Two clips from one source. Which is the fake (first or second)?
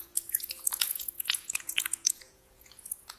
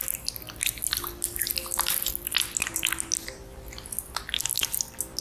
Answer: first